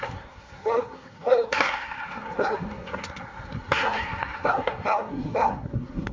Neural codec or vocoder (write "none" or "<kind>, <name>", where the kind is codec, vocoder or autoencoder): codec, SNAC